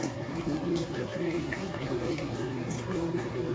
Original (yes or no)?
no